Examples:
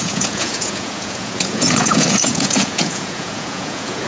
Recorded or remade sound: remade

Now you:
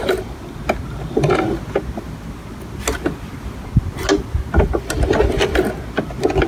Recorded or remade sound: recorded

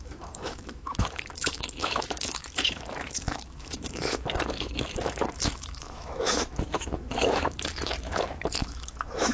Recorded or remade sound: remade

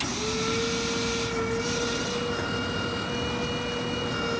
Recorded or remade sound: recorded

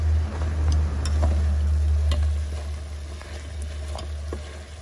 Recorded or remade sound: recorded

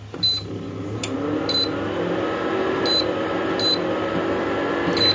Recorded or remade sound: recorded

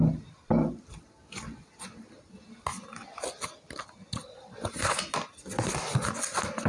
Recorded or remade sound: recorded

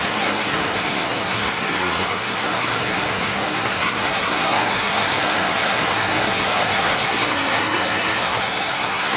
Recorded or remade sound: remade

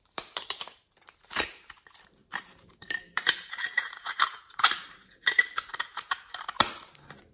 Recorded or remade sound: remade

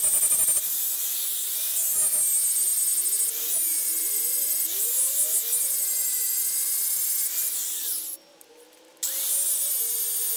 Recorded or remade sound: recorded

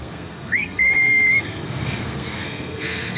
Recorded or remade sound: remade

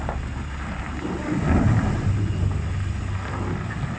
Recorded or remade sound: recorded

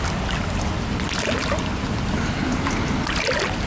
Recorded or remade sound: recorded